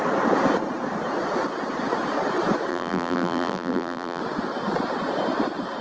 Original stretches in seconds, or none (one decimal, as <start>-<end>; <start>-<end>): 0.0-2.7; 4.2-5.8